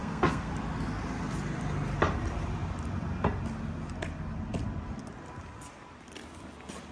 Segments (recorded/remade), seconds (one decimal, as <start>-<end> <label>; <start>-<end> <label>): 0.0-0.5 remade; 0.5-6.9 recorded